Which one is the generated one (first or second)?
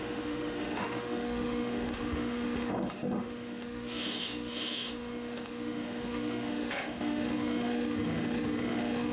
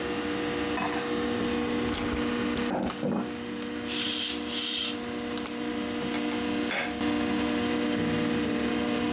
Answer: first